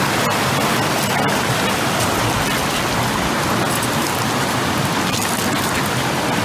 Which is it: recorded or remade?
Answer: recorded